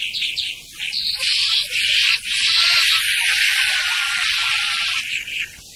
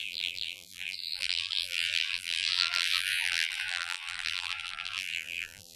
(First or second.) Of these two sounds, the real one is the first